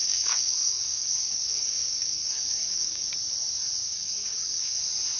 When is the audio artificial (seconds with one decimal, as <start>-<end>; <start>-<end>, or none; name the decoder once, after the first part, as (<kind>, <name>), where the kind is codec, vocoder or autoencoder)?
0.0-3.1 (codec, DAC); 3.9-4.8